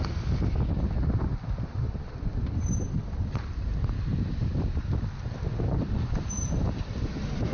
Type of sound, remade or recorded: recorded